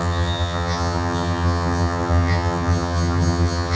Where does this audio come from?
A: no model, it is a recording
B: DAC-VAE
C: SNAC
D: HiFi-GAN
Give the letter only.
D